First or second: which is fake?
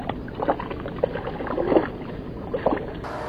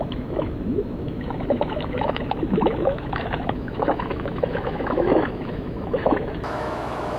second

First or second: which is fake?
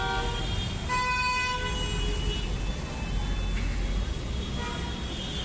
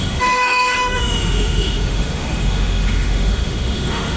second